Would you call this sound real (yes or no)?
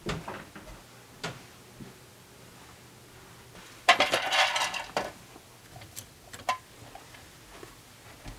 yes